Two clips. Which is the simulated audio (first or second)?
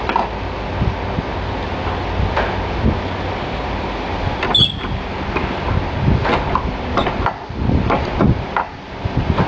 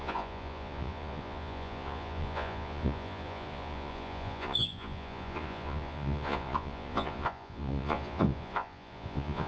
second